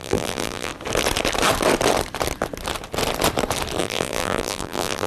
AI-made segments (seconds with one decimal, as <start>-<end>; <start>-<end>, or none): 0.0-0.7; 3.8-5.1